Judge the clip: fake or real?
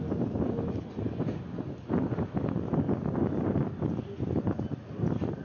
real